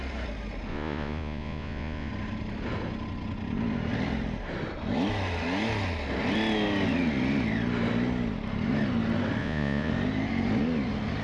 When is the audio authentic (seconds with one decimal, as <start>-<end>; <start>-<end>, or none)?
0.0-0.7; 2.1-9.4; 9.9-11.2